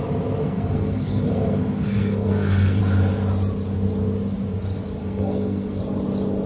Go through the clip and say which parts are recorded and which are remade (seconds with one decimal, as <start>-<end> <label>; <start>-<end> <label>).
0.0-0.4 recorded; 0.4-2.8 remade; 2.8-5.0 recorded; 5.0-5.8 remade; 5.8-6.5 recorded